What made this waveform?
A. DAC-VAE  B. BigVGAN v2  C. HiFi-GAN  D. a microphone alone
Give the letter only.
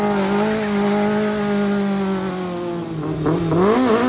D